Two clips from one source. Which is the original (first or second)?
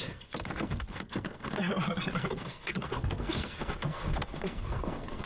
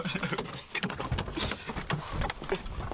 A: second